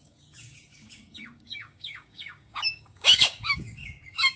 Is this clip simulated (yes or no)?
yes